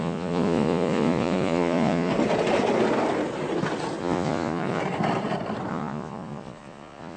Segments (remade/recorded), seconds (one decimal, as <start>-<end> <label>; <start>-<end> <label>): 0.0-2.1 remade; 2.1-4.0 recorded; 4.0-4.8 remade; 4.8-5.7 recorded; 5.7-7.2 remade